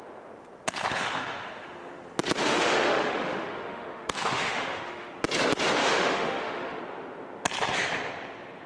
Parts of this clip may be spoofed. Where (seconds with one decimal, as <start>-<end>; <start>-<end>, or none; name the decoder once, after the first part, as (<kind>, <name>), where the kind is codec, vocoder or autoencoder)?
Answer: 2.4-5.1 (autoencoder, DAC-VAE); 5.8-6.8